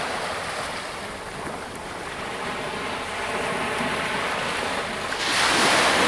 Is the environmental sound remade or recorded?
recorded